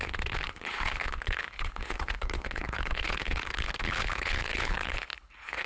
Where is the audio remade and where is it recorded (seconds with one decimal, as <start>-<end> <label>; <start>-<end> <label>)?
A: 0.0-5.7 remade